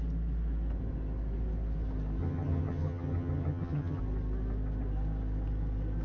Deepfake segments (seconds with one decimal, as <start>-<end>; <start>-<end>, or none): 2.2-4.0